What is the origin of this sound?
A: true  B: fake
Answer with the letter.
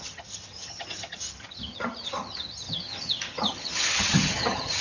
B